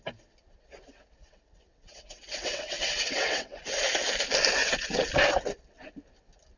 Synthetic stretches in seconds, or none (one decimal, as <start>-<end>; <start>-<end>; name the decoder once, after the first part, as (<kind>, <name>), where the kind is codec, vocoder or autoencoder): 1.2-3.6 (vocoder, WaveNeXt); 4.6-5.1